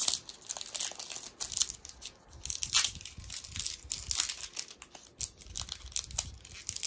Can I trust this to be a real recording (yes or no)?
yes